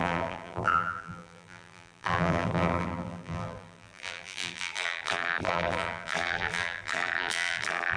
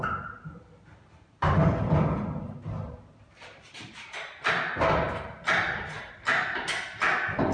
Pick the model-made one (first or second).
first